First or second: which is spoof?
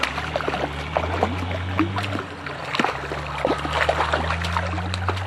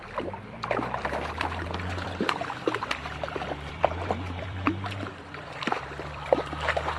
second